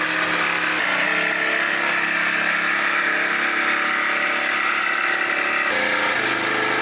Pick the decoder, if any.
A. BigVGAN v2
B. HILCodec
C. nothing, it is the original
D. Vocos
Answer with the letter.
C